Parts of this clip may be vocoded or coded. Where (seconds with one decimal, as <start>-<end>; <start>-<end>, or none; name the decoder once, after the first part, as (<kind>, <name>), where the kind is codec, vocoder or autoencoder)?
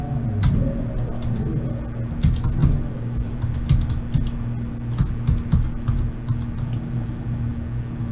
none